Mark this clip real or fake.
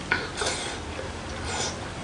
real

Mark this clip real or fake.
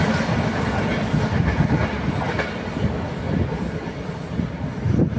real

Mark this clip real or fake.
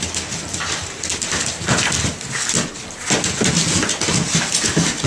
real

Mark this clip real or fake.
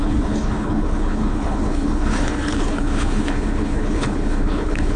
fake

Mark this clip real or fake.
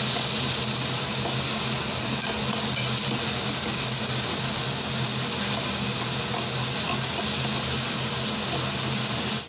real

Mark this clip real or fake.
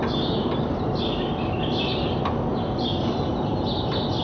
real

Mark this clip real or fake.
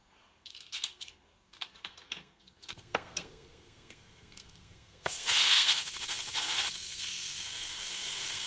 fake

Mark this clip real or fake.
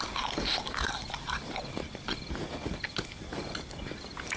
real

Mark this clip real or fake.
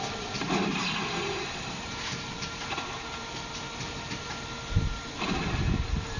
fake